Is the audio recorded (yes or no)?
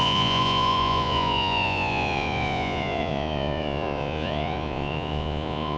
no